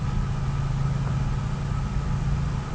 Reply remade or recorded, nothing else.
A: recorded